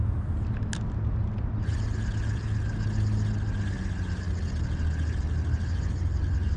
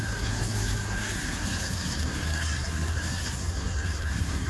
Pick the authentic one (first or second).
first